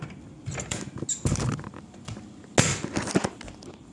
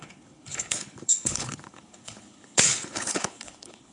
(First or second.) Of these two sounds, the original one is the first